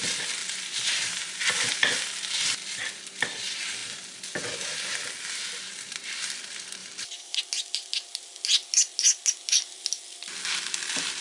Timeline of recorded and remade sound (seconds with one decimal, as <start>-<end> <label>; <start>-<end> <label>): 0.0-0.4 recorded; 0.4-1.4 remade; 1.4-6.8 recorded; 6.8-7.4 remade; 7.4-11.2 recorded